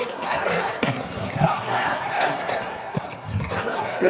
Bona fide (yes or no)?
no